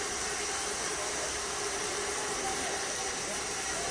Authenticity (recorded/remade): remade